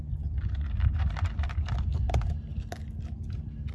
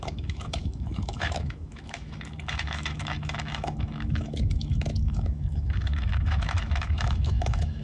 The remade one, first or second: second